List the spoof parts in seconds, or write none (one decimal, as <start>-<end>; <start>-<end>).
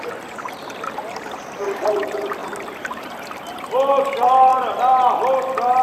0.0-4.5